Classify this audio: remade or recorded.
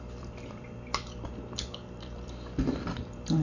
remade